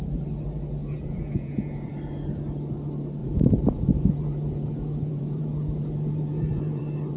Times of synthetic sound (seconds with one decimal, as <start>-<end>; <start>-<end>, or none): 0.8-1.9; 3.2-6.8